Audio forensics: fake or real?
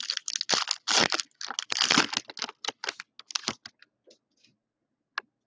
real